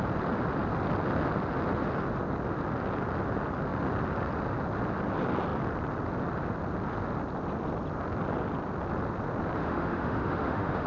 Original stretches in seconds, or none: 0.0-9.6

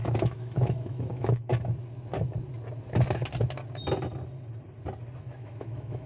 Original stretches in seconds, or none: 1.5-5.2

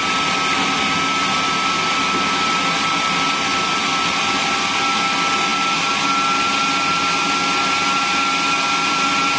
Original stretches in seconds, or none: 0.0-9.4

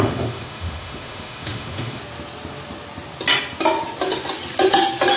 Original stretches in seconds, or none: 2.0-5.2

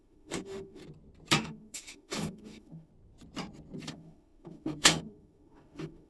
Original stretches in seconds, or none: 0.8-1.4; 2.9-3.9

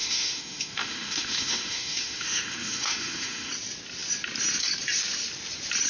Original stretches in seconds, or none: 3.5-5.9